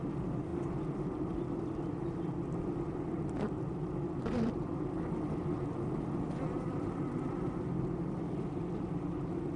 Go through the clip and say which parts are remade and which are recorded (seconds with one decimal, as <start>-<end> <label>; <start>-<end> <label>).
0.0-0.5 recorded; 0.5-1.3 remade; 1.3-9.6 recorded